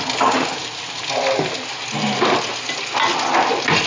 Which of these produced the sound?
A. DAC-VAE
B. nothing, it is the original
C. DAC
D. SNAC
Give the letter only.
B